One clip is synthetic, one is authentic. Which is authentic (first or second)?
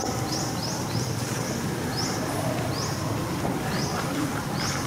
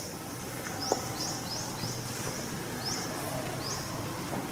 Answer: second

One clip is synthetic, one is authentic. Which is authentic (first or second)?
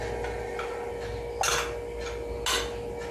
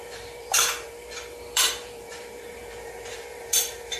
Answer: first